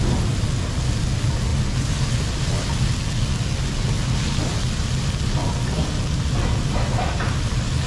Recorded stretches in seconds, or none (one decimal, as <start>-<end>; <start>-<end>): 0.0-7.9